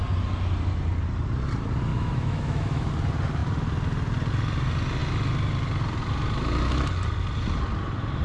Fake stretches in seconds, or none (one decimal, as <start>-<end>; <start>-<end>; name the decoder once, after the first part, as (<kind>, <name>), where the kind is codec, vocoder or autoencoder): 1.9-2.9 (autoencoder, DAC-VAE)